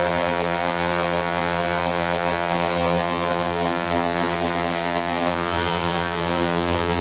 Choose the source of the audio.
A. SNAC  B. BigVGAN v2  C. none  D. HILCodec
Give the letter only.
B